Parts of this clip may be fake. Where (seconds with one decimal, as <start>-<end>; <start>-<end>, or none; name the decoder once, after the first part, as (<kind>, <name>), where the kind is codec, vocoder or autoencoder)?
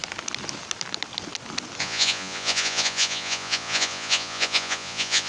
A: 1.8-5.3 (vocoder, Vocos)